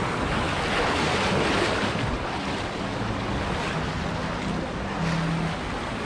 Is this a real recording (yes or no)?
yes